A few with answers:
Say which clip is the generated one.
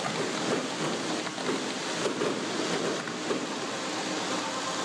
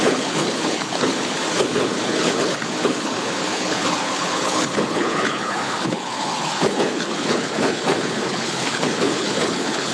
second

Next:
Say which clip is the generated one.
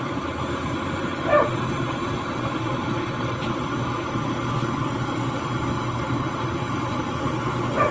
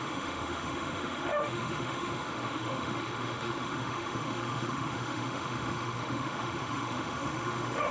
second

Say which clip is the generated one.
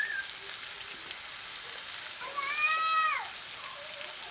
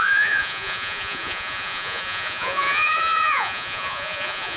second